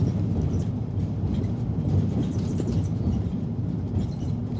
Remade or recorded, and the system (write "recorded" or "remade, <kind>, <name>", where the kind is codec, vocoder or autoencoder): remade, vocoder, BigVGAN v2